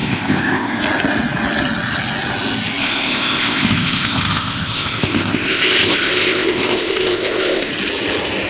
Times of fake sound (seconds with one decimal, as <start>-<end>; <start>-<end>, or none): 0.0-0.8; 2.8-7.7